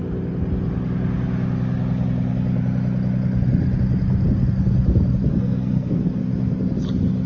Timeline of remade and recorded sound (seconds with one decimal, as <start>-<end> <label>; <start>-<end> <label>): 0.0-5.3 recorded; 5.3-6.2 remade; 6.2-7.3 recorded